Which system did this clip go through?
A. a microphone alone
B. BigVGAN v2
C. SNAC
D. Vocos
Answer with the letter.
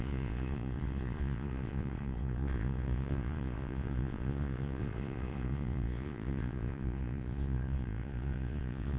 D